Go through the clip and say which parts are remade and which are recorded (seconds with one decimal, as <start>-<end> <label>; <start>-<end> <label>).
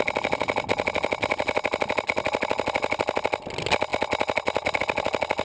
0.0-5.4 recorded